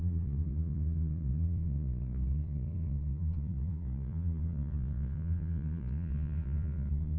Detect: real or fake fake